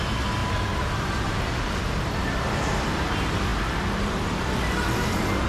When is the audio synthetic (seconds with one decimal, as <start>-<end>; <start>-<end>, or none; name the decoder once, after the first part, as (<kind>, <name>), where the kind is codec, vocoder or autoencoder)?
0.4-1.8 (vocoder, BigVGAN v2)